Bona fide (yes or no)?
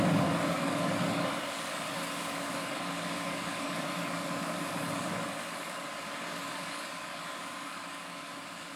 no